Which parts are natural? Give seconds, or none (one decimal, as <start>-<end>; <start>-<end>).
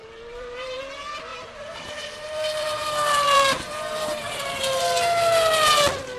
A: 0.8-1.3; 4.8-6.2